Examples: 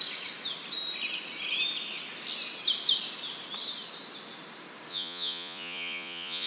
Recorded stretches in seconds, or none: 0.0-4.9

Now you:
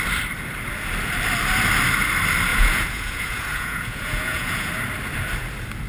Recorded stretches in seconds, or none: 0.0-2.5; 4.7-5.9

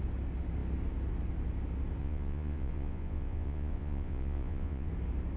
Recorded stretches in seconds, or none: 0.0-2.0; 4.9-5.4

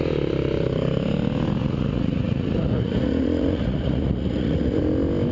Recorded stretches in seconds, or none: 0.0-1.6; 4.8-5.3

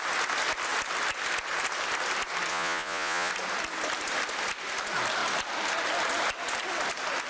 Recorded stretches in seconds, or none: 0.0-2.5; 3.3-7.3